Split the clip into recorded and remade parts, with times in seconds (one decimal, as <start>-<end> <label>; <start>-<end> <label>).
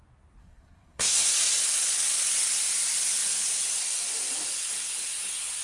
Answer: 0.0-0.4 recorded; 0.4-1.3 remade; 1.3-5.6 recorded